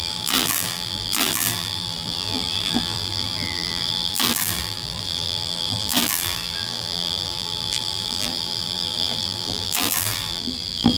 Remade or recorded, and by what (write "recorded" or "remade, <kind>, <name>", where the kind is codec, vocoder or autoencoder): remade, vocoder, BigVGAN v2